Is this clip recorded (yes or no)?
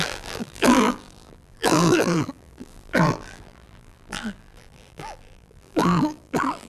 no